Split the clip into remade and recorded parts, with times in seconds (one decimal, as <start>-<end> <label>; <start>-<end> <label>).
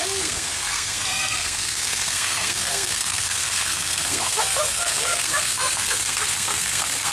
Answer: 0.0-7.1 remade